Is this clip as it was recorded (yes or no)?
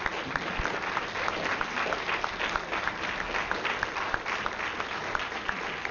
yes